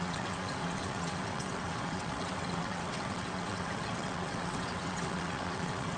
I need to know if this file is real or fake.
fake